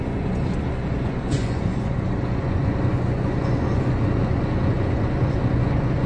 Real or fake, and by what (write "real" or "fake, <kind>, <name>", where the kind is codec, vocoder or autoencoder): fake, vocoder, Vocos